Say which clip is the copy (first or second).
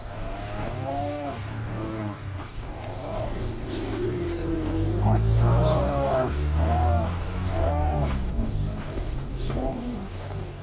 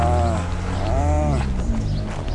first